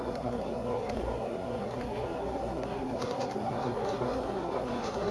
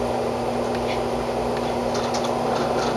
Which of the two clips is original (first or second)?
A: second